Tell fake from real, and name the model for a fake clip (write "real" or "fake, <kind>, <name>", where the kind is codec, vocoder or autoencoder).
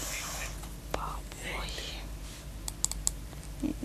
real